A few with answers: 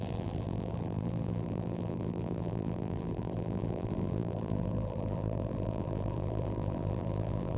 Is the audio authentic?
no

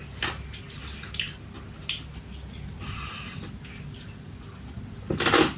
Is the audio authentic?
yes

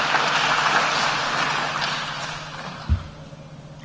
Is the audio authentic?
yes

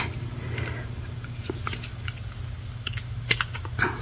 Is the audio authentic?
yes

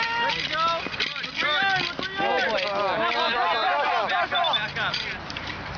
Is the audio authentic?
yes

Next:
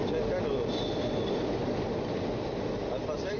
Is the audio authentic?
yes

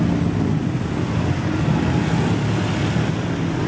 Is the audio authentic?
yes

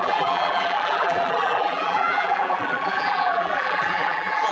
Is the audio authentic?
no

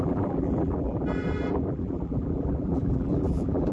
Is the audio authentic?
no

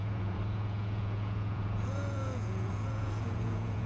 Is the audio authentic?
no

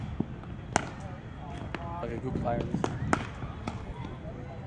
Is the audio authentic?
yes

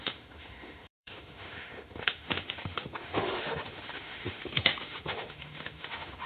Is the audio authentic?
no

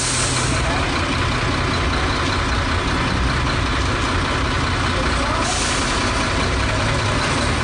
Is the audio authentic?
yes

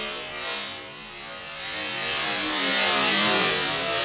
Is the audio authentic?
yes